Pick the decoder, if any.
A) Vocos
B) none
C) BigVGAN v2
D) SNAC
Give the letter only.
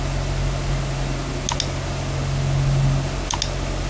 B